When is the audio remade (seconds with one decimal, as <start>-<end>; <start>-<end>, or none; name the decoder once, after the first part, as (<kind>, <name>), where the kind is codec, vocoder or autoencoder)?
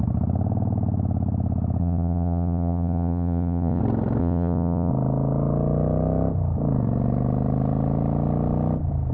1.8-3.8 (vocoder, Vocos); 4.2-4.9